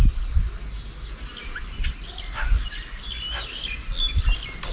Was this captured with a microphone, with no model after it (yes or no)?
yes